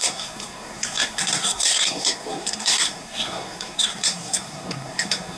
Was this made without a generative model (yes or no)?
no